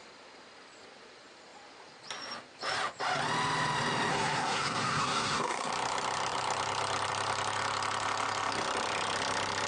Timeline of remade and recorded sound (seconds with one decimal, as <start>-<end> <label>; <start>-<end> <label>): 0.0-4.1 recorded; 4.1-5.7 remade; 5.7-9.7 recorded